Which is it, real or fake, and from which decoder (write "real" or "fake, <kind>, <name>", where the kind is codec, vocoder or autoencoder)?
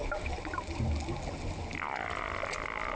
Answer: real